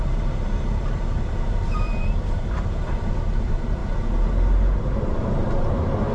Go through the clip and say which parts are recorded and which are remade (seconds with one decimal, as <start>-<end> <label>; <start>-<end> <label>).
0.0-3.8 remade; 3.8-5.2 recorded; 5.2-6.1 remade